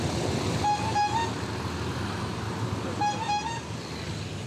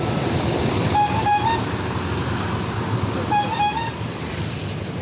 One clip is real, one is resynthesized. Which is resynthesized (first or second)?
second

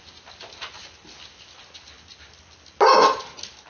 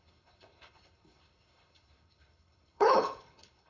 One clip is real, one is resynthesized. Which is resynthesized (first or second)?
second